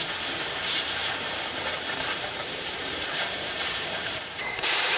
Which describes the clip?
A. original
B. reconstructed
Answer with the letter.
B